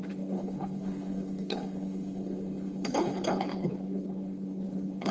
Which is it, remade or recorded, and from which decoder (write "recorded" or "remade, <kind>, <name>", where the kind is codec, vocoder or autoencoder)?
remade, codec, HILCodec